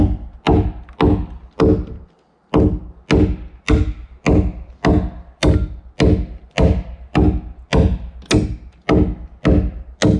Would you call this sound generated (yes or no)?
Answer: no